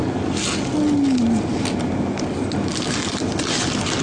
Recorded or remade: recorded